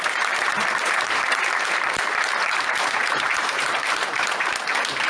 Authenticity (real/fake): fake